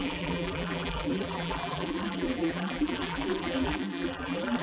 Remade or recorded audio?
remade